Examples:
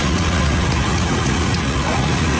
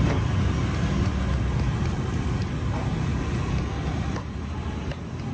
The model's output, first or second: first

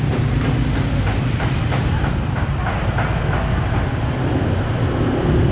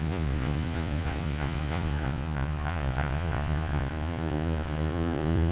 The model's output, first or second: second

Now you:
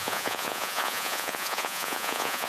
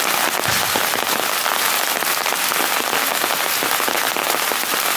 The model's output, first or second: first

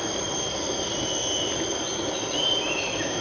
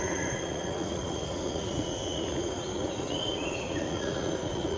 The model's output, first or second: second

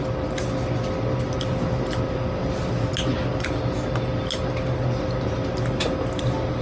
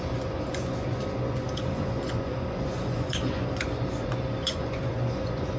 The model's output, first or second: second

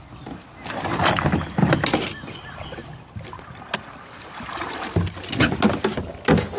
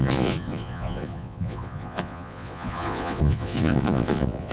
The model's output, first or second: second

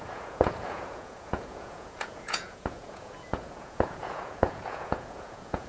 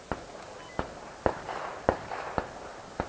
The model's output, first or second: first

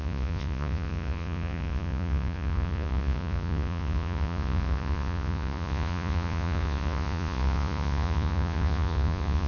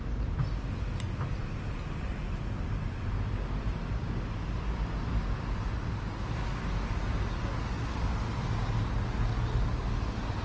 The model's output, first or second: first